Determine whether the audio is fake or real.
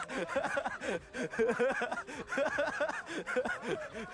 fake